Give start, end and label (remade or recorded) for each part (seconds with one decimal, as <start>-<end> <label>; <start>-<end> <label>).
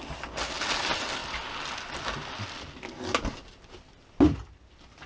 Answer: 0.0-5.1 recorded